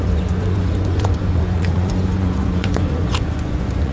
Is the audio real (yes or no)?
no